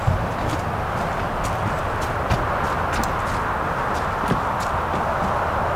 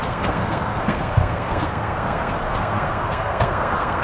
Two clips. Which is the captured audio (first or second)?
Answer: first